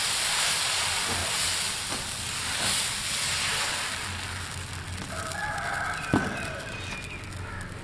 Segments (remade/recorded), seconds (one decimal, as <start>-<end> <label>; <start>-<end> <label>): 0.0-7.8 recorded